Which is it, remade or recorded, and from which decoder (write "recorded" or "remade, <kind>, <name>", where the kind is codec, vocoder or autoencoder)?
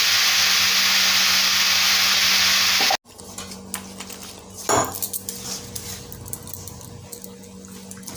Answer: recorded